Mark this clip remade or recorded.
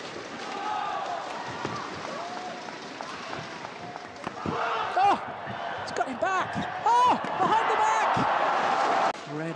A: recorded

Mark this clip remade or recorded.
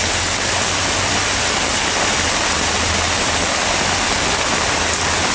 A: recorded